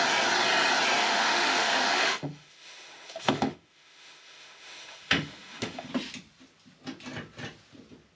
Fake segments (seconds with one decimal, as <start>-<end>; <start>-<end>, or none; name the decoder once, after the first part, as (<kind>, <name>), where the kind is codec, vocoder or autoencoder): 1.0-5.9 (autoencoder, DAC-VAE)